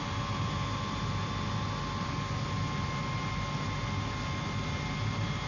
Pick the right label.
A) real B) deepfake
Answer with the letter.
A